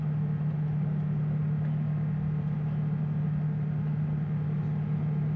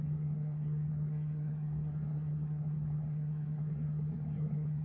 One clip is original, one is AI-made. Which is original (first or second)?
first